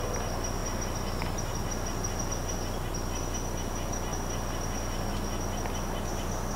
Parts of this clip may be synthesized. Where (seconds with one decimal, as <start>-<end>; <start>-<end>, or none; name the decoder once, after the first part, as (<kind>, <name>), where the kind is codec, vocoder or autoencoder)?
none